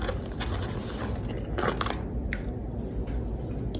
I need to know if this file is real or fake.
real